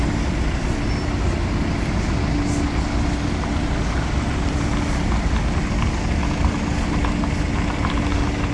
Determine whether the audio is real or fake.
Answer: real